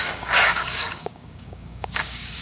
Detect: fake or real fake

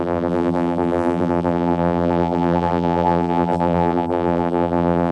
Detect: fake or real fake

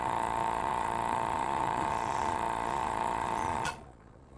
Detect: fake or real fake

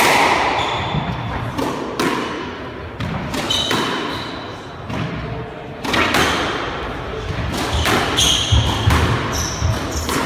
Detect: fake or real real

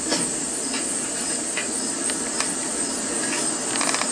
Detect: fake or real real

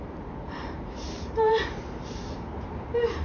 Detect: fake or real fake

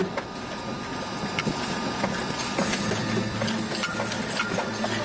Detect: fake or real real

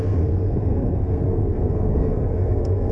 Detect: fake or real fake